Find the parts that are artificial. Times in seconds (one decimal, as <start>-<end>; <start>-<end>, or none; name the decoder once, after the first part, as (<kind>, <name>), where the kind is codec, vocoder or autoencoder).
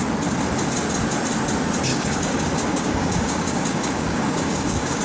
1.9-5.0 (codec, DAC)